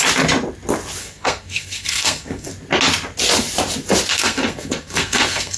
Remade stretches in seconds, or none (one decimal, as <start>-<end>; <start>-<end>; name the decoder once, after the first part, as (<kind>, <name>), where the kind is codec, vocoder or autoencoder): 1.0-2.5 (codec, SNAC); 4.1-5.6